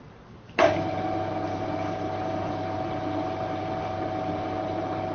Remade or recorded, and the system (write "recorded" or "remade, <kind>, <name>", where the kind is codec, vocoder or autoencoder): recorded